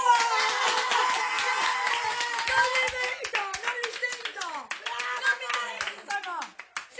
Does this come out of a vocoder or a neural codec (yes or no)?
no